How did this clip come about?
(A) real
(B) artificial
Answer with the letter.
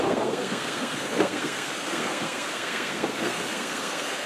B